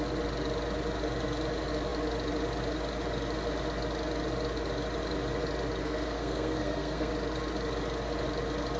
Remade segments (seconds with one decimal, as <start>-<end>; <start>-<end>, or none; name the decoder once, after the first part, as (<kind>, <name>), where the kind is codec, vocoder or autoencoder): 5.8-7.1 (codec, SNAC)